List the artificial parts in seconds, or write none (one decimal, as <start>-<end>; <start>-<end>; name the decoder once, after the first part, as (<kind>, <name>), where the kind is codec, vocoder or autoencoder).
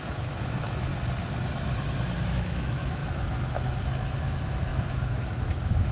0.0-0.9 (autoencoder, DAC-VAE); 2.2-5.9